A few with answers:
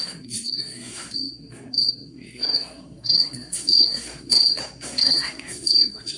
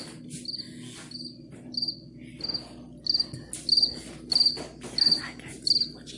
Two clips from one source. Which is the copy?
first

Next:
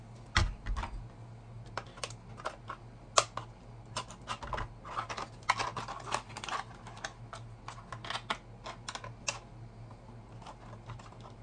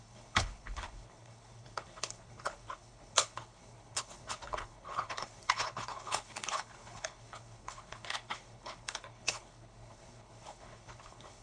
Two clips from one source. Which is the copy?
second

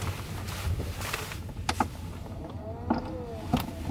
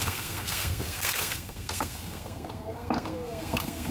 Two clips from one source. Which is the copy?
second